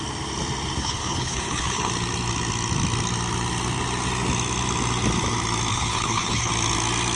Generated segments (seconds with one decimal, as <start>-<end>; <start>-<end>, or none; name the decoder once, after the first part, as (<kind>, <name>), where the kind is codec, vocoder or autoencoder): 0.8-1.9 (codec, HILCodec); 5.7-6.5